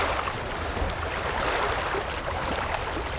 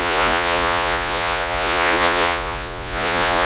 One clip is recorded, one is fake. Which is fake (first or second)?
second